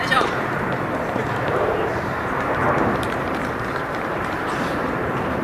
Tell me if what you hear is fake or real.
fake